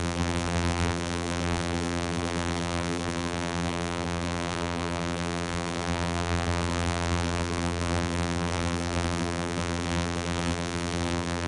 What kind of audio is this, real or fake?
fake